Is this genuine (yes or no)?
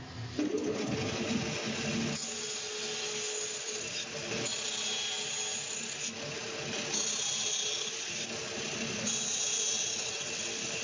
yes